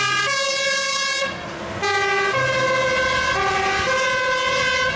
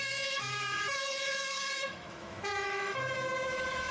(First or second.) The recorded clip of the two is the first